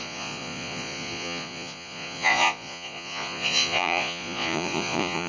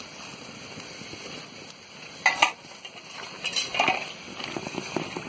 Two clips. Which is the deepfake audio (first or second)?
first